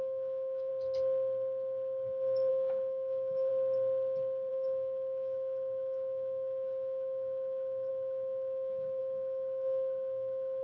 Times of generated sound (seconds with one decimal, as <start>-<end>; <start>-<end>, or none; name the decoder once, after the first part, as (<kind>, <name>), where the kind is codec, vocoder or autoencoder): 0.0-0.7 (autoencoder, DAC-VAE); 2.5-3.5; 4.5-10.6

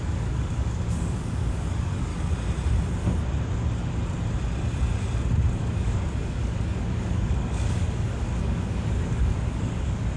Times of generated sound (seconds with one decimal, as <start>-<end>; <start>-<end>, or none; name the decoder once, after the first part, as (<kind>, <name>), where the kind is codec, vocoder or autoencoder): 0.0-2.1 (codec, DAC); 5.5-10.2

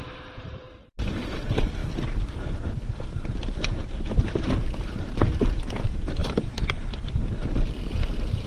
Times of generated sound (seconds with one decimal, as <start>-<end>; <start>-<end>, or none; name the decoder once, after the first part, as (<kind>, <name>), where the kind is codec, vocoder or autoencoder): 0.0-1.8 (vocoder, BigVGAN v2); 2.9-8.5

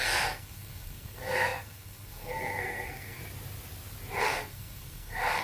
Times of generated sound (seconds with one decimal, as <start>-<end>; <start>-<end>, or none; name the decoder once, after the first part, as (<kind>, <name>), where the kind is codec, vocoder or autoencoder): 0.0-3.2 (codec, SNAC); 4.2-5.4